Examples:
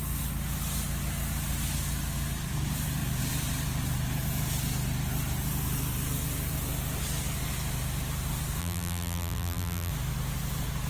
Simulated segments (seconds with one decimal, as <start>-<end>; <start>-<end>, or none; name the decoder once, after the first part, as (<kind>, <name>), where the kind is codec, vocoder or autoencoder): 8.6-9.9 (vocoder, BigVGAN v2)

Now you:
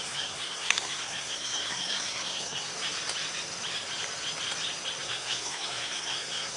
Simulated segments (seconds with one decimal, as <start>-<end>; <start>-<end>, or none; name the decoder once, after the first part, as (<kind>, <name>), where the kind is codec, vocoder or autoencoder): 0.0-2.7 (codec, SNAC); 5.0-6.6

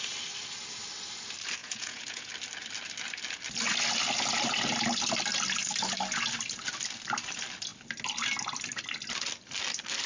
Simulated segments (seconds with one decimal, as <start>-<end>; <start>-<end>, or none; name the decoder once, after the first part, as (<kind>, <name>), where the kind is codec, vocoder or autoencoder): 1.6-2.3 (vocoder, Vocos)